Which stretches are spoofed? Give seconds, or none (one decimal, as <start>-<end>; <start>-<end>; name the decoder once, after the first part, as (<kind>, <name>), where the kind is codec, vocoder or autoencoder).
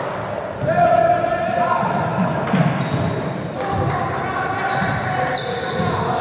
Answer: none